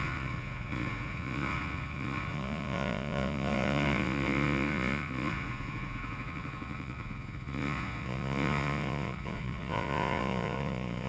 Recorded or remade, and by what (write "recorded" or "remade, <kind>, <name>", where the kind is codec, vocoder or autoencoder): remade, vocoder, Vocos